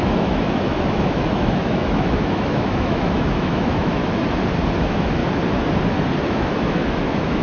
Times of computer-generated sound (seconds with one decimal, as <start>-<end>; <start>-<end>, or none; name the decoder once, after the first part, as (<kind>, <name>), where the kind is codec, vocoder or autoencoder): 0.0-4.0 (autoencoder, DAC-VAE); 4.8-5.2; 6.3-7.4